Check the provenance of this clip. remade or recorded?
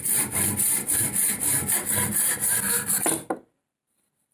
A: recorded